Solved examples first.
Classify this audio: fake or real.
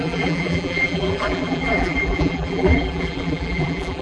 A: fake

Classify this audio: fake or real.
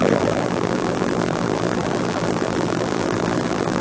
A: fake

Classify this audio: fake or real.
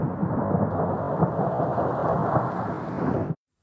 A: real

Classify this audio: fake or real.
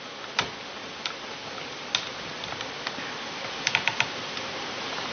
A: real